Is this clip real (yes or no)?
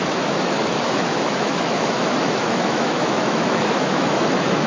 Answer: no